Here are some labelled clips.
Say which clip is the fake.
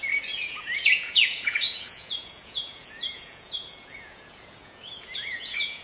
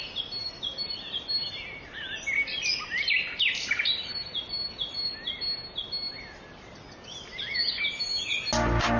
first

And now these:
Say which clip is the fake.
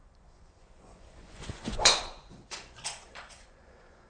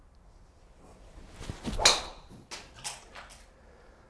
first